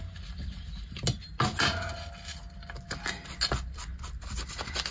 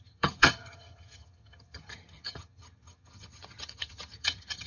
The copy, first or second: second